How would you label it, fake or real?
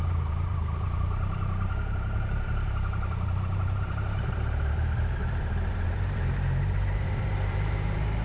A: fake